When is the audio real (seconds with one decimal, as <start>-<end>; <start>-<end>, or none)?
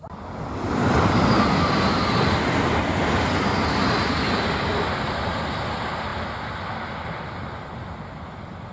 0.0-8.7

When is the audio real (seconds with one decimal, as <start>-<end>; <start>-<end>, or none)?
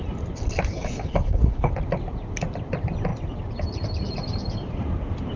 0.0-0.7; 1.7-5.4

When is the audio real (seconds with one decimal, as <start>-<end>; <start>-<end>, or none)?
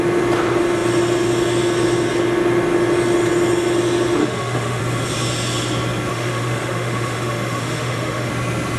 0.0-4.2; 4.8-6.1; 8.3-8.8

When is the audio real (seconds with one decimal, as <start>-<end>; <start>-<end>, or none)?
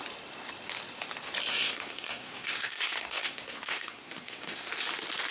0.0-1.5; 4.7-5.3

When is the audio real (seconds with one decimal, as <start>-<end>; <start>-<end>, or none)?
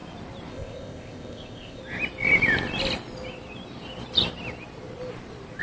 0.0-0.5; 1.8-5.6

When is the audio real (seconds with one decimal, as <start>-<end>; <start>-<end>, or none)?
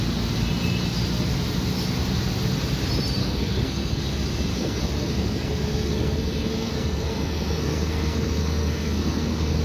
0.0-3.2; 4.0-4.5